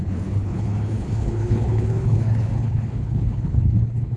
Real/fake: fake